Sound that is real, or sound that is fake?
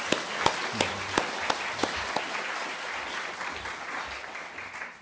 real